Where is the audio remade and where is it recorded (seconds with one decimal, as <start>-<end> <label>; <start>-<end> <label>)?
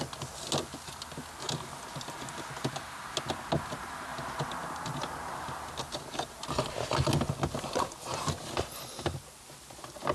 0.0-10.1 recorded